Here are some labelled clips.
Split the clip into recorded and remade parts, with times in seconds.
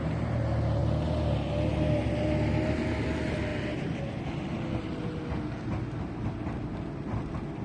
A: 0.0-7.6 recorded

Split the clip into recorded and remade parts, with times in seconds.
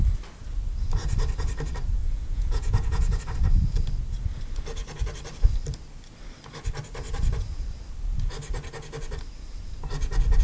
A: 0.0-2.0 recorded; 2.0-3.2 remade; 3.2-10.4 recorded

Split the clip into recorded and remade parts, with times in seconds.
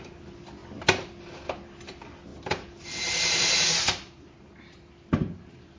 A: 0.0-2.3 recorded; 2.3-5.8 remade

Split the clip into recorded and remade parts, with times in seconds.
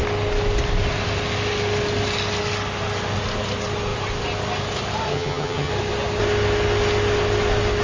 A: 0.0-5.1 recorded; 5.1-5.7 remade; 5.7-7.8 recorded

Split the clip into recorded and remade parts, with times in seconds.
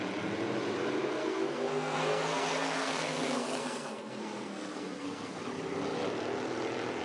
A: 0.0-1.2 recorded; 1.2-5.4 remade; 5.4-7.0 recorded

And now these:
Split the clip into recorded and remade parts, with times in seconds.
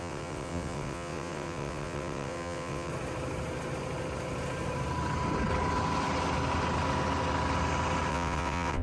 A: 0.0-2.9 remade; 2.9-8.1 recorded; 8.1-8.8 remade